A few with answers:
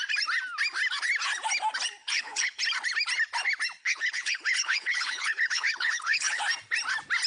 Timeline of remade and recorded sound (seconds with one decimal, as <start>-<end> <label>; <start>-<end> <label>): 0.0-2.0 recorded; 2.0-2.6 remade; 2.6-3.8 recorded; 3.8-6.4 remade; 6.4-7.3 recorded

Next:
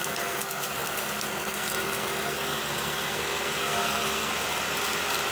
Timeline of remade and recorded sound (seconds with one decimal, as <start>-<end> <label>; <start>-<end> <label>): 0.0-4.3 remade; 4.3-5.3 recorded

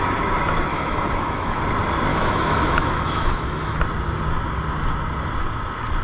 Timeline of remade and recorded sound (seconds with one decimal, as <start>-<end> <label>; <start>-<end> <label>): 0.0-0.7 recorded; 0.7-1.6 remade; 1.6-2.1 recorded; 2.1-3.8 remade; 3.8-6.0 recorded

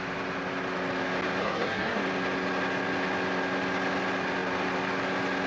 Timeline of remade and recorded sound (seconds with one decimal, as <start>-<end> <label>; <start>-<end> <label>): 0.0-1.4 recorded; 1.4-2.0 remade; 2.0-5.5 recorded